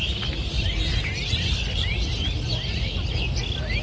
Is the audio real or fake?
real